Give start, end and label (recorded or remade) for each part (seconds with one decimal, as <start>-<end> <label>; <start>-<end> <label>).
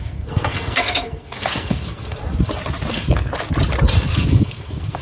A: 0.0-2.2 remade; 2.2-2.9 recorded; 2.9-3.3 remade; 3.3-4.1 recorded; 4.1-5.0 remade